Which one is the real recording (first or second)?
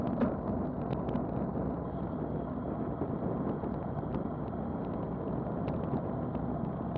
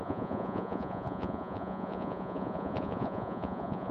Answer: first